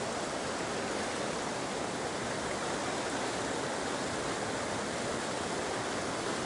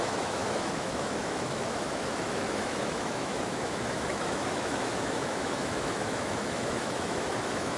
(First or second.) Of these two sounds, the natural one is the first